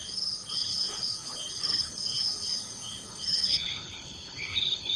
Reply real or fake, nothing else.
fake